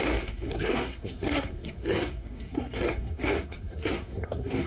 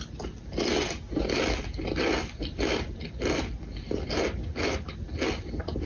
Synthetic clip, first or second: first